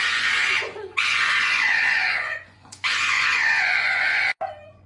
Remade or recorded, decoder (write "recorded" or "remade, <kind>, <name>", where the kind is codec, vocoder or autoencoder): remade, vocoder, Vocos